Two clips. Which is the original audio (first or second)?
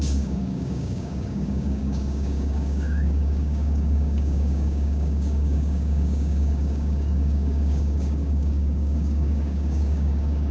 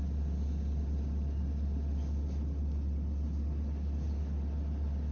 second